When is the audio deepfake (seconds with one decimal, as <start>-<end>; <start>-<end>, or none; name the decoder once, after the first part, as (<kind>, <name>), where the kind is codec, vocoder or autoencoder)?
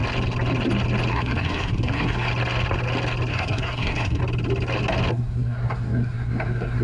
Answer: 1.1-2.3 (codec, SNAC); 3.3-4.2; 5.1-6.8